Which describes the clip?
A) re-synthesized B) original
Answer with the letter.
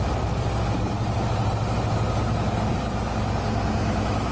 B